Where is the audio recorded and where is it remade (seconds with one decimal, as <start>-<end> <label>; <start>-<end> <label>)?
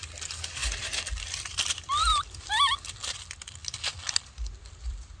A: 0.0-0.6 remade; 0.6-1.1 recorded; 1.1-3.6 remade; 3.6-4.6 recorded; 4.6-5.2 remade